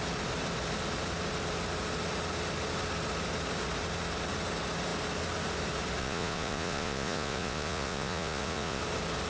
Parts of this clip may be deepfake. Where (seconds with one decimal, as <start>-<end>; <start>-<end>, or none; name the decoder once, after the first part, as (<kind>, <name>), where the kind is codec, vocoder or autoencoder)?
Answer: 6.0-8.8 (vocoder, Vocos)